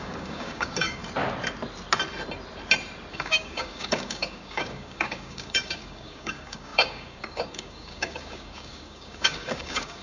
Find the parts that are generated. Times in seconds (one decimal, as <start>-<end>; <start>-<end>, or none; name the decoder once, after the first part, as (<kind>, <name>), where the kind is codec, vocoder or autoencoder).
0.0-1.0 (codec, DAC); 3.1-10.0